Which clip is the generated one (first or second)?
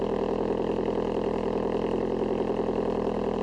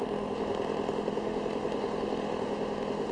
second